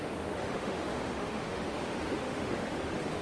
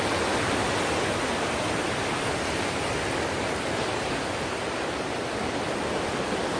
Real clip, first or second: second